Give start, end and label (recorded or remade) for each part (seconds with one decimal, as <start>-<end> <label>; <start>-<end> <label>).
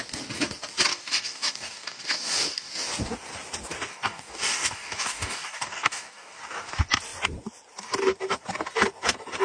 0.0-0.9 recorded; 0.9-2.7 remade; 2.7-3.9 recorded; 3.9-6.4 remade; 6.4-9.4 recorded